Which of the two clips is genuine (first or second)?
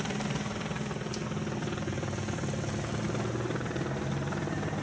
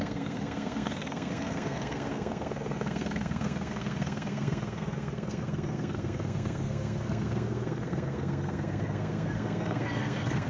first